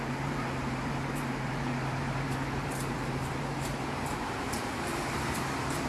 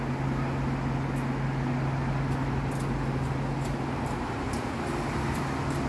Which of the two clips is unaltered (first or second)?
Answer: second